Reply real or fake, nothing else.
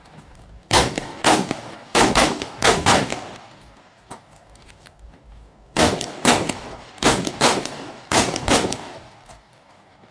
fake